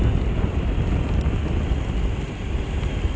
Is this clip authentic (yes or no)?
yes